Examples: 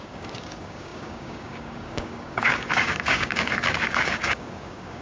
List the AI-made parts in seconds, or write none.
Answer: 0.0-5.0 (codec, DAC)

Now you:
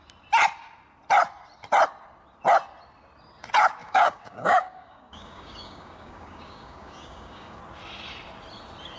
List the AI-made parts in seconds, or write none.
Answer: 3.8-7.6 (codec, DAC)

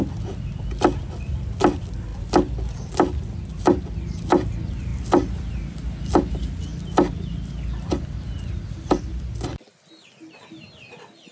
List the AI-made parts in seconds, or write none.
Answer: none

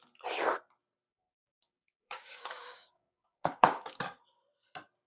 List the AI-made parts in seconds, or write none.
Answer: 1.1-4.2 (codec, DAC)

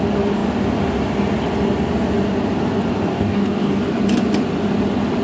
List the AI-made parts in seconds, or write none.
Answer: 3.1-3.8 (codec, DAC)

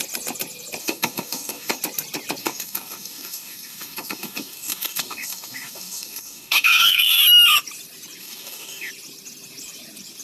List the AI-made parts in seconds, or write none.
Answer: 0.8-1.8 (codec, DAC); 2.4-7.2; 8.2-8.9

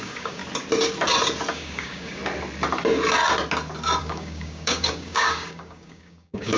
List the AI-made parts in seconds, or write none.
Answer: 0.0-0.4 (codec, DAC); 1.5-2.2; 4.0-6.6

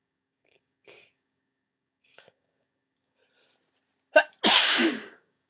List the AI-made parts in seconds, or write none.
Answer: 0.0-3.2 (codec, DAC); 4.5-5.5